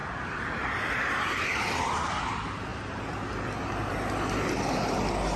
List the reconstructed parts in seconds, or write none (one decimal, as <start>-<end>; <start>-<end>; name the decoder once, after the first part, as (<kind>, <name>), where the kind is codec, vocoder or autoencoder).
0.0-1.9 (vocoder, BigVGAN v2)